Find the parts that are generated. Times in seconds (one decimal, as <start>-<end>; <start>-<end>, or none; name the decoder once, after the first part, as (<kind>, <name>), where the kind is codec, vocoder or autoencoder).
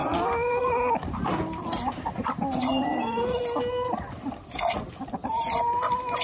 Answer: 0.0-0.6 (vocoder, BigVGAN v2)